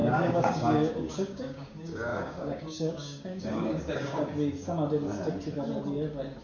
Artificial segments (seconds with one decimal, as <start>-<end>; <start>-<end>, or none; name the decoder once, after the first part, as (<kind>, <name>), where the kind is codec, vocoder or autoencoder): 0.0-4.3 (codec, DAC)